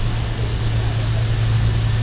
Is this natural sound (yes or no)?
yes